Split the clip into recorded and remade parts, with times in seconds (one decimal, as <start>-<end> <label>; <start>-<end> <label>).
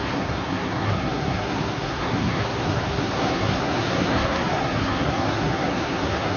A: 0.0-6.4 remade